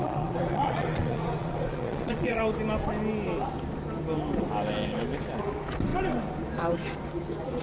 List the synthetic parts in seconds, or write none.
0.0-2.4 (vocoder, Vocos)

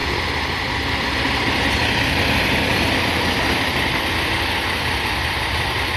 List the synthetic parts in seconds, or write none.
none

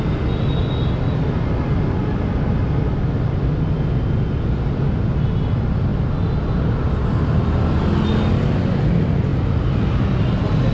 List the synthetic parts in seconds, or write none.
none

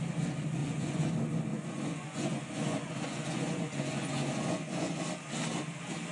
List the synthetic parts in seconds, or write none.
0.6-1.1 (vocoder, Vocos); 1.5-5.0

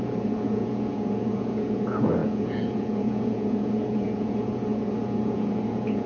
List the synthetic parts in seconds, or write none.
0.0-6.1 (vocoder, Vocos)

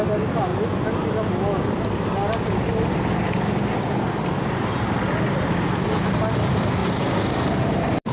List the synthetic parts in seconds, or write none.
none